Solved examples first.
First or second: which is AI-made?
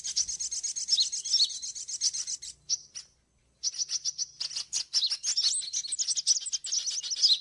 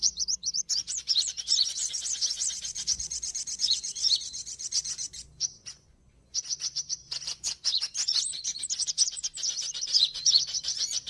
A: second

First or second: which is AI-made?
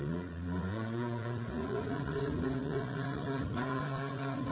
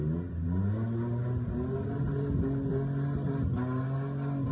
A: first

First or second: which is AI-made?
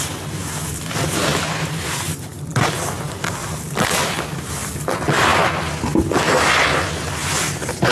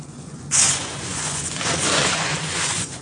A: second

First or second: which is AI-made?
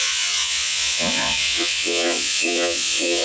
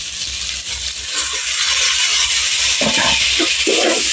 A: first